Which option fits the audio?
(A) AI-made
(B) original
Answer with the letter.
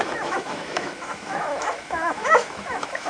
A